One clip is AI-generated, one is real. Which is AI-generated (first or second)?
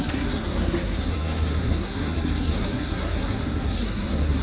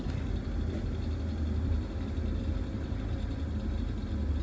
first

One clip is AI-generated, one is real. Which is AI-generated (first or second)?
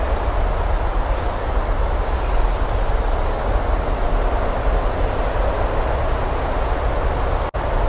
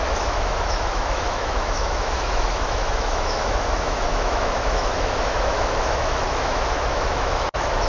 second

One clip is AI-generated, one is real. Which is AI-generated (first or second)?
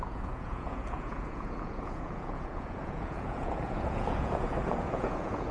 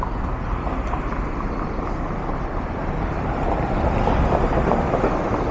first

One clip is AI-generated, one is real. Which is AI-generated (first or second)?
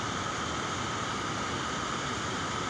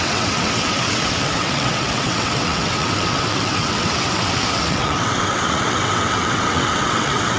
second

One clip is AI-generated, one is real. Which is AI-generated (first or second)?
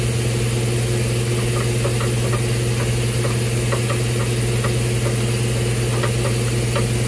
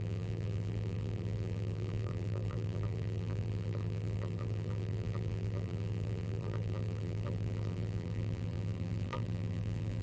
second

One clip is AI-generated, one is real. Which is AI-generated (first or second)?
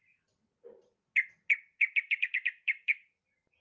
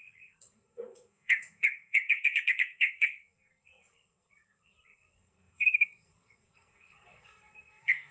second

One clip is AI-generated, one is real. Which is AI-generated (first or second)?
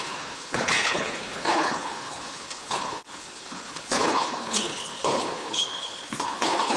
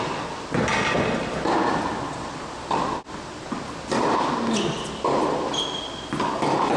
first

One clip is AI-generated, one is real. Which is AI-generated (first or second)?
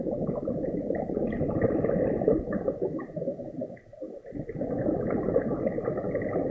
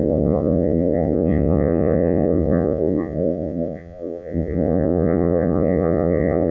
second